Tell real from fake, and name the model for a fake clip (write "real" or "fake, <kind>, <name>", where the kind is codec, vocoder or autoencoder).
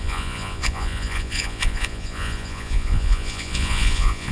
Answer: fake, vocoder, Vocos